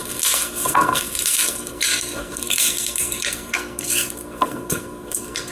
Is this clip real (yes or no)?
no